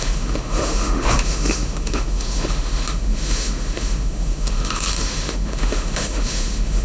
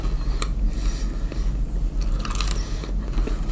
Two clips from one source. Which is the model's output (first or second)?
first